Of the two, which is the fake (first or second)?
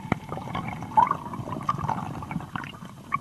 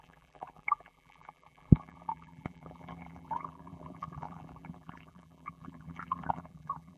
second